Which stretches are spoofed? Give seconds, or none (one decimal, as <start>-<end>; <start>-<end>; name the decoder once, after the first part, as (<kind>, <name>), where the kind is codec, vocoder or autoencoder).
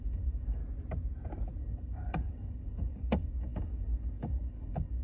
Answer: 0.0-0.6 (codec, DAC); 1.6-5.0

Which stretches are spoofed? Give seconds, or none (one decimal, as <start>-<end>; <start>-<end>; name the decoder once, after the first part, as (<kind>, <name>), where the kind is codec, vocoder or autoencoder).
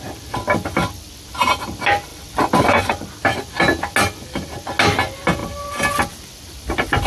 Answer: 0.6-1.2 (vocoder, BigVGAN v2); 2.1-2.9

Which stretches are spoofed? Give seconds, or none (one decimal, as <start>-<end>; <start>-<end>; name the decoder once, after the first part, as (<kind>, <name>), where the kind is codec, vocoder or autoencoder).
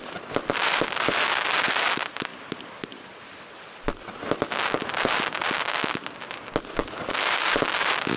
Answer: none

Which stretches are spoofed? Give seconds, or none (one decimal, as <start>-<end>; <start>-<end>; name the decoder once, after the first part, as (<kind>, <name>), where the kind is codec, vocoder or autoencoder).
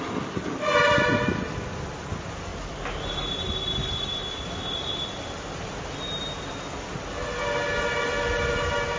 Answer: none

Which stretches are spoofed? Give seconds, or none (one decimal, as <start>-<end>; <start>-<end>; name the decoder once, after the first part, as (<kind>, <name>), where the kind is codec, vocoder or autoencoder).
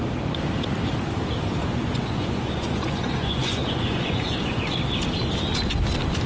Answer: 1.6-4.8 (vocoder, Vocos)